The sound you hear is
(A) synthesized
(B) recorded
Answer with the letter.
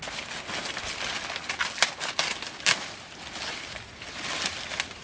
B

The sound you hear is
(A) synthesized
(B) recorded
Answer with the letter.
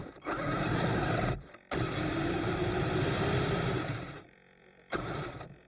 A